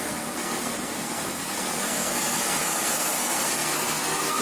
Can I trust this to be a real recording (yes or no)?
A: no